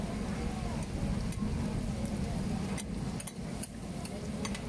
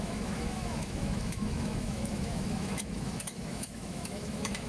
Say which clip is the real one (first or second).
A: first